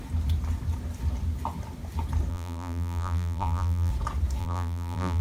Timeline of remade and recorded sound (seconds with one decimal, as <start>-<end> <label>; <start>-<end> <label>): 0.0-2.3 recorded; 2.3-3.9 remade; 3.9-4.4 recorded; 4.4-5.2 remade